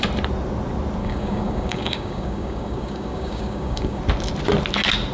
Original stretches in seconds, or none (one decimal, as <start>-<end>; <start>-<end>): 0.0-1.0; 4.0-5.1